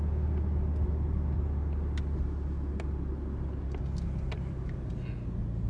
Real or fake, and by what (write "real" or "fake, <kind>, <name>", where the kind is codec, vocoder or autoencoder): real